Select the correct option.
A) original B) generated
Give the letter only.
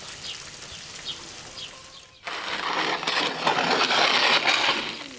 A